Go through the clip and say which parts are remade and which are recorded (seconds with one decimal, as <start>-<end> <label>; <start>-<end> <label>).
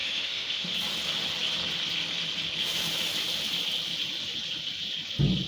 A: 0.0-0.7 remade; 0.7-5.5 recorded